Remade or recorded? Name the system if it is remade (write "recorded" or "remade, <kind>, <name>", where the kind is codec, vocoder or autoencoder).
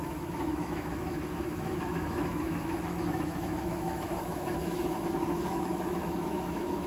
remade, autoencoder, DAC-VAE